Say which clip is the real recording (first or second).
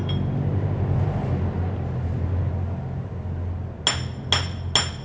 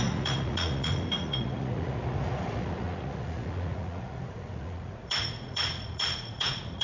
first